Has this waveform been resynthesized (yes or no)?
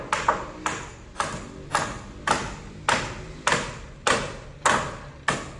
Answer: no